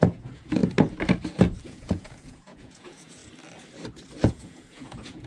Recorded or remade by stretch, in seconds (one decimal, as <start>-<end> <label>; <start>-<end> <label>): 0.0-0.6 remade; 0.6-1.6 recorded; 1.6-3.2 remade; 3.2-4.3 recorded; 4.3-5.3 remade